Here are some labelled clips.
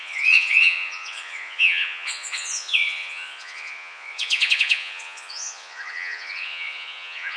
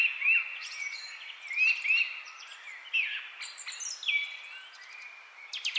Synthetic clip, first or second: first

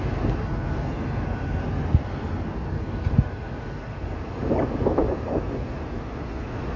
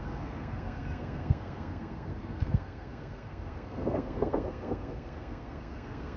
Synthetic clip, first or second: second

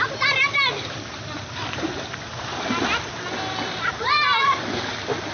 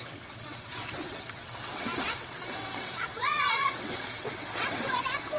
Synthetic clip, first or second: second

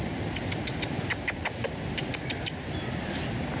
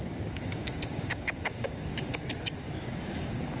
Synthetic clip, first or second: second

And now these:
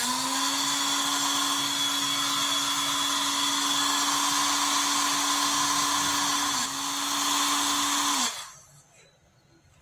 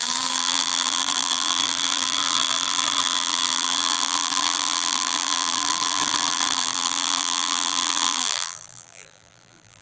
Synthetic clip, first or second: second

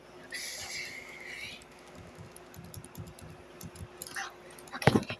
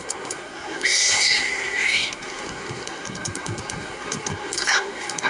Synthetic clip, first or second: second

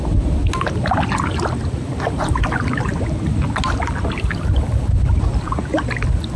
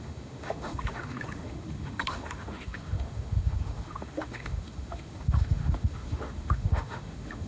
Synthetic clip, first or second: second